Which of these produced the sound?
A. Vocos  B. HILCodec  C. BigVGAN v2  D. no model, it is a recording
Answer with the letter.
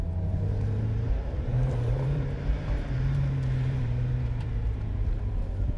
C